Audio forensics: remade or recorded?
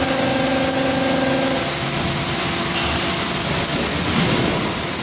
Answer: recorded